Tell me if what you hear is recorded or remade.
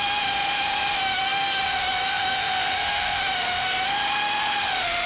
remade